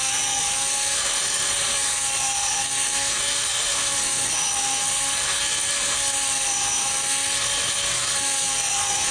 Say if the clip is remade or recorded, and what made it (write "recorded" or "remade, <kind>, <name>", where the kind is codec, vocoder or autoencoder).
remade, codec, SNAC